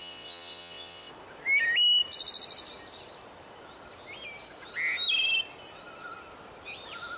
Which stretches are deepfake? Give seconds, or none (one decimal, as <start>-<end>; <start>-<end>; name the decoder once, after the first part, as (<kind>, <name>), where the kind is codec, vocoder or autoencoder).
0.0-1.1 (vocoder, WaveNeXt)